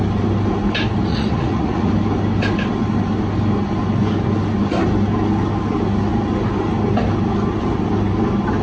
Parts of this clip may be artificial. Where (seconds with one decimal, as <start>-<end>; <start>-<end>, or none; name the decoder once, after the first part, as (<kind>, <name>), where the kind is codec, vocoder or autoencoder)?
1.1-1.9 (vocoder, Vocos)